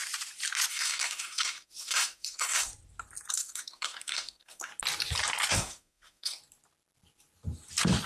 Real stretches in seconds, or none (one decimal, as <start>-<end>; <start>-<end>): 0.0-0.7; 2.7-3.3; 4.7-5.5; 6.4-8.1